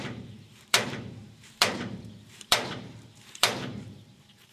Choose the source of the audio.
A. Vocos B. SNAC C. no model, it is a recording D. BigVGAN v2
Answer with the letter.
D